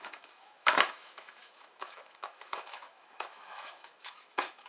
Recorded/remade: remade